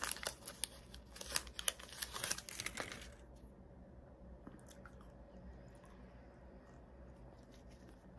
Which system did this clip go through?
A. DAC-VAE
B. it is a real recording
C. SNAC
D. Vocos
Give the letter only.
B